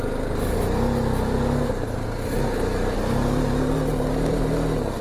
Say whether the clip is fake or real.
real